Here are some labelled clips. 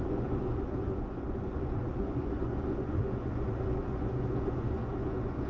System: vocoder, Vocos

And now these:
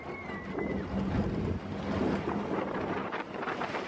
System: none